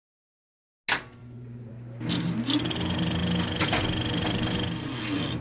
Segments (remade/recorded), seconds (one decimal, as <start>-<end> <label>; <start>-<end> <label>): 0.0-1.2 recorded; 1.2-1.7 remade; 1.7-5.4 recorded